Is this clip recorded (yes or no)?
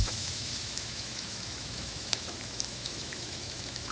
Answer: no